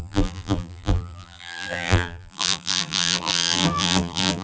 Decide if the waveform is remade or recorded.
remade